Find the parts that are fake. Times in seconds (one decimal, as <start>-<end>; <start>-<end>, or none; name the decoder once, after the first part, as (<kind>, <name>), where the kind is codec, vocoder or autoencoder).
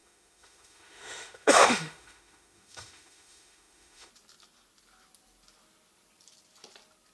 0.0-4.1 (autoencoder, DAC-VAE)